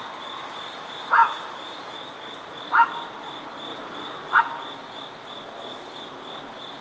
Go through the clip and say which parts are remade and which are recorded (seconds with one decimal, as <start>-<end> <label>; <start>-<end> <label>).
0.0-1.2 recorded; 1.2-2.0 remade; 2.0-3.7 recorded; 3.7-4.4 remade; 4.4-6.8 recorded